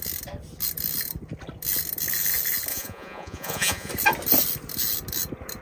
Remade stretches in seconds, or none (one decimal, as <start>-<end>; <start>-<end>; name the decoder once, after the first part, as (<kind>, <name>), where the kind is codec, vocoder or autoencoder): 2.7-3.9 (vocoder, Vocos)